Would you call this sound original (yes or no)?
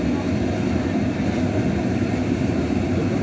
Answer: yes